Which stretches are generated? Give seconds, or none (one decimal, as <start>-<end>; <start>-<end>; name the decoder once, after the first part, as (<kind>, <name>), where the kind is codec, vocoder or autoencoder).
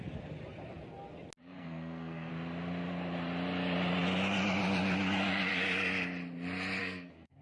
1.4-2.3 (codec, SNAC); 6.8-7.4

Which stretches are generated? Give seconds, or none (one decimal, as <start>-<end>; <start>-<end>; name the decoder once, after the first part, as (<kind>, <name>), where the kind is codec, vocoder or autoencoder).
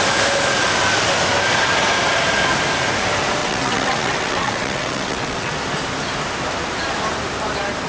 3.4-5.5 (vocoder, WaveNeXt)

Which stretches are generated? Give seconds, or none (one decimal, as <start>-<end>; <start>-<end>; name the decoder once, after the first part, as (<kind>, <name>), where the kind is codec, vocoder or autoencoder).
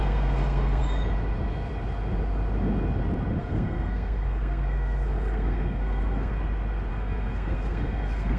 0.0-0.8 (codec, SNAC); 3.4-6.3; 6.9-8.4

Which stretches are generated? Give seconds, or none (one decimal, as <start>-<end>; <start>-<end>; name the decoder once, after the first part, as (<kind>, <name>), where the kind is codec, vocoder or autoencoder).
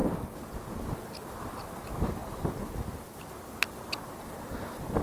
none